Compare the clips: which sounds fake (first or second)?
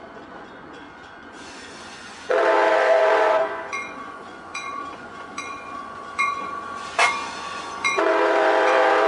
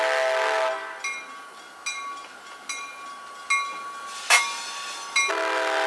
first